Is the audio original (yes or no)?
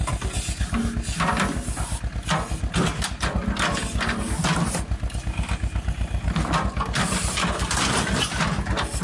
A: yes